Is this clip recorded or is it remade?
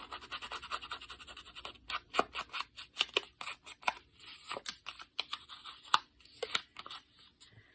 recorded